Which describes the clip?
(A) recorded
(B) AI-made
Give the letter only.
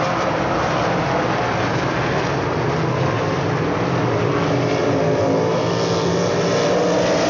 A